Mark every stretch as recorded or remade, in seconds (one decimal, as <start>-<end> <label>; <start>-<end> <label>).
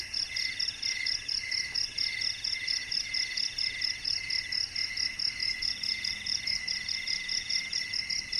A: 0.0-5.4 recorded; 5.4-8.0 remade; 8.0-8.4 recorded